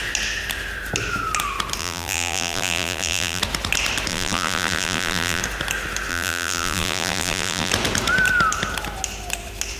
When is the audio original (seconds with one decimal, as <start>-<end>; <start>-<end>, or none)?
0.0-1.8; 3.4-4.1; 5.4-6.1; 7.7-9.8